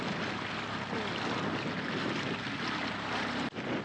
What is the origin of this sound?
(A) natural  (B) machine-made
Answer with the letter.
A